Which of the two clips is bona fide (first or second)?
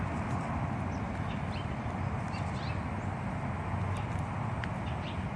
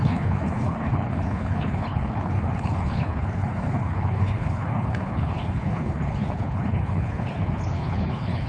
first